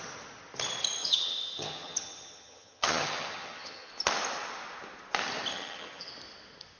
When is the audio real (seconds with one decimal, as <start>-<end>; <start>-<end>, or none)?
0.0-1.0; 3.9-5.5; 6.1-6.8